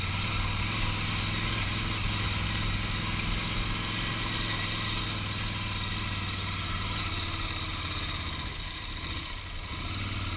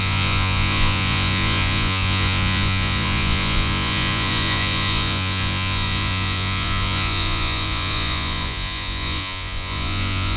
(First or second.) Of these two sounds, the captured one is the first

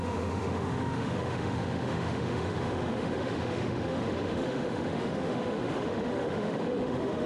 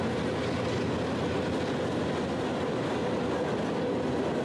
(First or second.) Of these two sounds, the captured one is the second